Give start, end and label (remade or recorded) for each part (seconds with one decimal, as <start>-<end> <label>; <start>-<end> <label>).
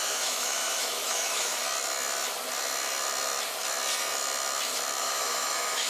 0.0-1.6 remade; 1.6-5.0 recorded; 5.0-5.9 remade